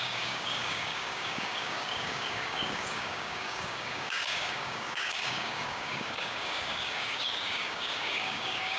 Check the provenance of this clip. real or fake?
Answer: fake